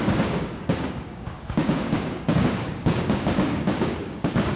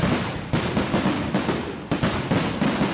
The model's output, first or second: first